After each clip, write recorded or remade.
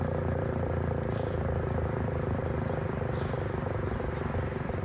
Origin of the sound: remade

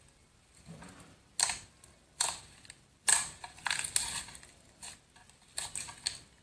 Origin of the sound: recorded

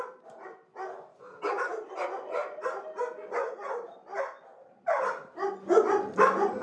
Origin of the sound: recorded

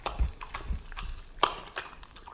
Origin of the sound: recorded